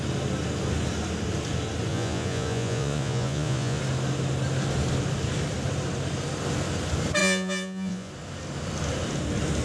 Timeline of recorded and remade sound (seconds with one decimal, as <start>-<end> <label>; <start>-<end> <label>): 0.0-1.9 recorded; 1.9-3.8 remade; 3.8-7.2 recorded; 7.2-8.1 remade; 8.1-9.6 recorded